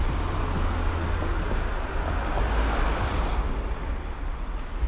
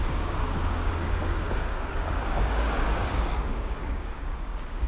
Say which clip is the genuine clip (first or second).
first